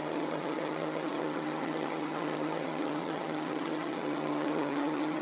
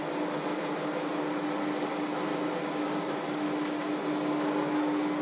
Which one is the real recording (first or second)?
second